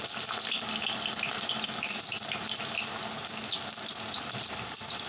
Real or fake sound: real